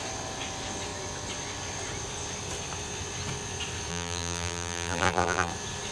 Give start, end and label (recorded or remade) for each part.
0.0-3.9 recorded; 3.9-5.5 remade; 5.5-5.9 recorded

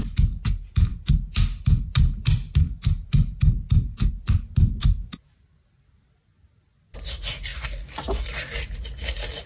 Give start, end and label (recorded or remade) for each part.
0.0-9.5 recorded

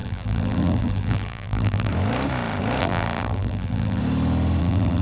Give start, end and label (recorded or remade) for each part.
0.0-1.9 remade; 1.9-2.8 recorded; 2.8-4.0 remade; 4.0-4.6 recorded; 4.6-5.0 remade

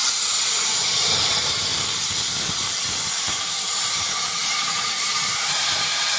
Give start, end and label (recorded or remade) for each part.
0.0-0.9 recorded; 0.9-1.7 remade; 1.7-3.5 recorded; 3.5-6.2 remade

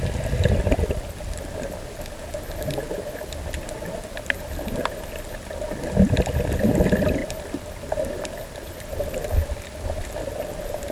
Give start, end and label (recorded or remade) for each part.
0.0-7.2 recorded; 7.2-8.9 remade; 8.9-10.9 recorded

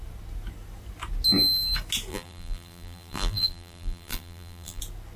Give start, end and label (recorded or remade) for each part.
0.0-2.1 recorded; 2.1-4.8 remade; 4.8-5.2 recorded

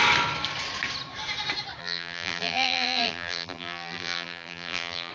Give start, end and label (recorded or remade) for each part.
0.0-1.8 recorded; 1.8-5.1 remade